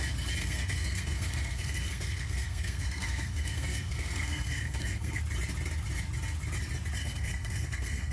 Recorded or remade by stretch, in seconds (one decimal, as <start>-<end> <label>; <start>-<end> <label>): 0.0-0.4 recorded; 0.4-5.2 remade; 5.2-7.0 recorded; 7.0-8.1 remade